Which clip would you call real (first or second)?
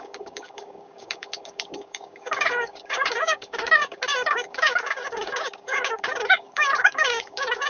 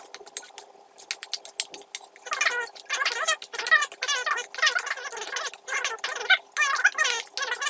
second